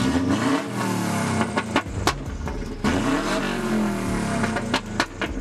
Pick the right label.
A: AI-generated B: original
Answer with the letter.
B